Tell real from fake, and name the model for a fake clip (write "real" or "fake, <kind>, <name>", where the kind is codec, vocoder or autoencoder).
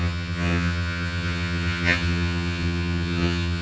fake, vocoder, HiFi-GAN